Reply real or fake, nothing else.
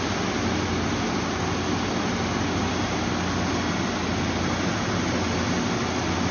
real